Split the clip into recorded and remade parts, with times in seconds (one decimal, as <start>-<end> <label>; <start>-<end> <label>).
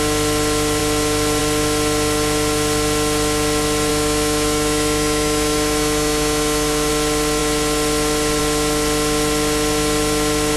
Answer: 0.0-3.9 recorded; 3.9-6.9 remade; 6.9-10.6 recorded